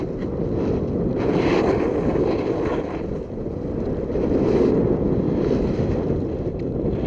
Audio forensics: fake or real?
real